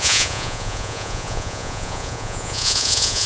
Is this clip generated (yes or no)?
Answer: yes